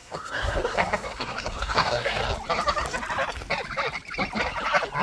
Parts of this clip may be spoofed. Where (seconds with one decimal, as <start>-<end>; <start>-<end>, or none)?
0.0-2.2